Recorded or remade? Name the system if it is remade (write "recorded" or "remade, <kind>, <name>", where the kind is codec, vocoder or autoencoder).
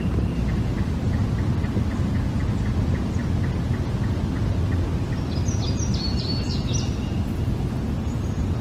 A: recorded